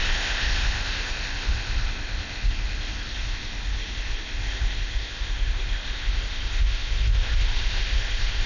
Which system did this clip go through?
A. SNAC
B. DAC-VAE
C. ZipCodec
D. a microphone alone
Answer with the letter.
C